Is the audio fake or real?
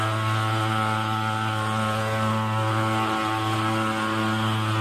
real